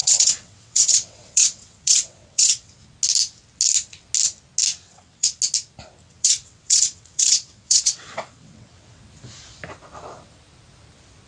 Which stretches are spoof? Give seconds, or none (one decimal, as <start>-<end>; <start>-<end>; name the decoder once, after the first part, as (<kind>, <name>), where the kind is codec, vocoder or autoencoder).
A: 0.0-2.7 (vocoder, WaveNeXt); 4.7-5.4; 6.0-9.0